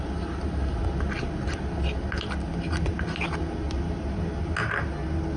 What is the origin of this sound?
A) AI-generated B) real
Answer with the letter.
B